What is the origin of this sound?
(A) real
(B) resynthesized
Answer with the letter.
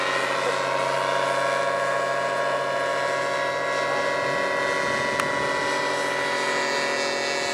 A